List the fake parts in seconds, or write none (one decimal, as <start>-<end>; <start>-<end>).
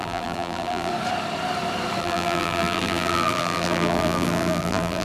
0.0-0.9; 2.0-5.0